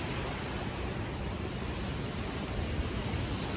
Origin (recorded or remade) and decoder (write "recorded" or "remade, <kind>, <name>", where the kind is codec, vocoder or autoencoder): recorded